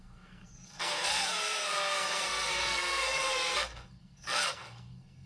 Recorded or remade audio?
remade